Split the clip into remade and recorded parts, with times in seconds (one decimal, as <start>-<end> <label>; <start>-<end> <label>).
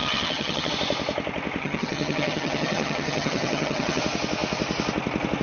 0.0-0.7 remade; 0.7-1.6 recorded; 1.6-4.0 remade; 4.0-5.4 recorded